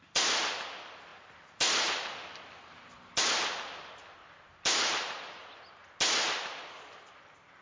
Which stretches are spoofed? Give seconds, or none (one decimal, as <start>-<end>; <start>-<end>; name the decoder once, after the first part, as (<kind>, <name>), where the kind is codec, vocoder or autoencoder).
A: none

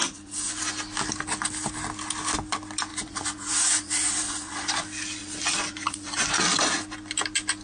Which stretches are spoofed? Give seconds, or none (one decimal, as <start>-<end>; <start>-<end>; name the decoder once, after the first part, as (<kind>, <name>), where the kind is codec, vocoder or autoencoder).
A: 0.0-0.6 (vocoder, Vocos); 2.9-4.7; 5.2-6.4

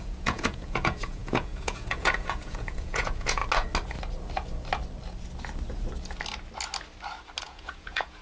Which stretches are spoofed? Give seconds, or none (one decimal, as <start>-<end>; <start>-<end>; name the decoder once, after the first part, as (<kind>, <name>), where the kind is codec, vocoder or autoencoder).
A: 0.0-3.4 (vocoder, Vocos); 7.4-8.2